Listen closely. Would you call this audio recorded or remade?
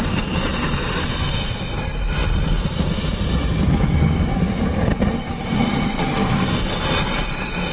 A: recorded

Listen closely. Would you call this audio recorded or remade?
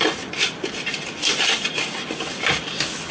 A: recorded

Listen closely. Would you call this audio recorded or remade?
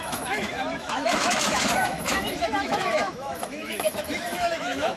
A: remade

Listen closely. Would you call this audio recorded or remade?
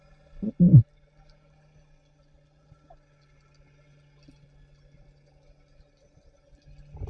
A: recorded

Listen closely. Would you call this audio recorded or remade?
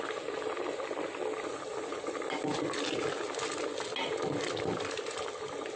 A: recorded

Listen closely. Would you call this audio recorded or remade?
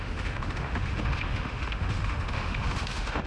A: remade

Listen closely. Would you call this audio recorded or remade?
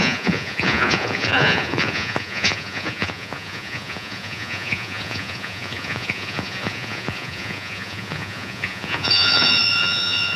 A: remade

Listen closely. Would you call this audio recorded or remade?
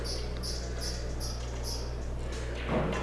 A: recorded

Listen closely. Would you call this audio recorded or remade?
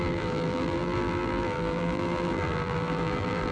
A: remade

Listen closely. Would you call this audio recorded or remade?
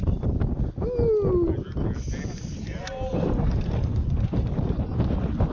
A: recorded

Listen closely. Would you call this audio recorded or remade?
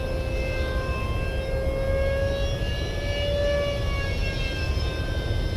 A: recorded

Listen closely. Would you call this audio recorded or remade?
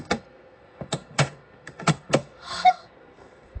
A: remade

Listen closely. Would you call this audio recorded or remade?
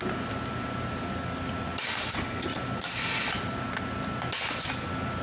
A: recorded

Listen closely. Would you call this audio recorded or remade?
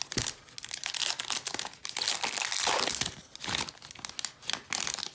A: recorded